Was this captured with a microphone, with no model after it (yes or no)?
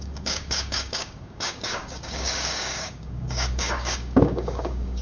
no